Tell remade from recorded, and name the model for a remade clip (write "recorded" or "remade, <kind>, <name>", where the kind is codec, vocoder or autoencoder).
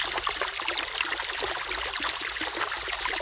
recorded